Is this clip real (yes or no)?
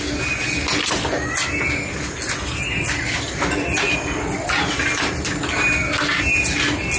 yes